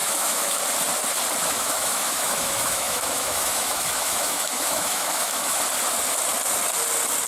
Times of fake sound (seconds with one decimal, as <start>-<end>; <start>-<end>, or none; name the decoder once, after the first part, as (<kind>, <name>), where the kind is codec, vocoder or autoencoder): 0.0-0.6 (autoencoder, DAC-VAE); 1.4-5.6